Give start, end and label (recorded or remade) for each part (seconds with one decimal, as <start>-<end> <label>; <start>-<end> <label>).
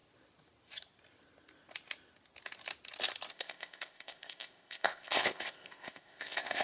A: 0.0-3.3 recorded; 3.3-6.6 remade